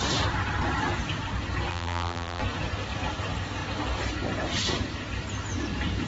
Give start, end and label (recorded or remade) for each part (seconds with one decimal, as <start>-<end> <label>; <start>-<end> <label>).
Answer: 0.0-1.7 recorded; 1.7-2.4 remade; 2.4-6.1 recorded